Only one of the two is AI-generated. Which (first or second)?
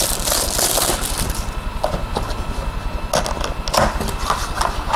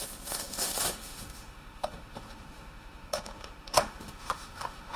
second